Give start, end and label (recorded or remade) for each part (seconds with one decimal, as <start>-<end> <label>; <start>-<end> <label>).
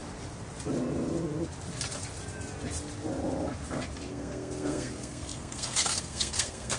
0.0-4.1 recorded; 4.1-6.8 remade